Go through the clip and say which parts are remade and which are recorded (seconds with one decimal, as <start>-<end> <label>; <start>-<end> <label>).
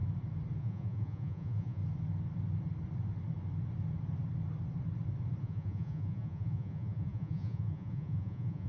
0.0-0.6 recorded; 0.6-1.8 remade; 1.8-5.4 recorded; 5.4-8.7 remade